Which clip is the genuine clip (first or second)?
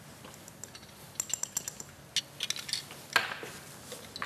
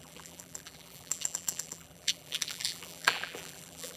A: first